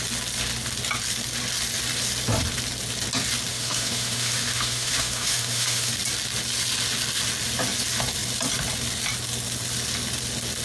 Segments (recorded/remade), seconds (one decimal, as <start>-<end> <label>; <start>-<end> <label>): 0.0-3.5 recorded; 3.5-5.9 remade; 5.9-10.6 recorded